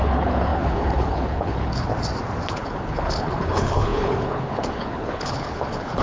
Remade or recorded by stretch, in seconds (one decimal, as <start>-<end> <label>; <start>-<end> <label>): 0.0-1.9 remade; 1.9-2.5 recorded; 2.5-6.0 remade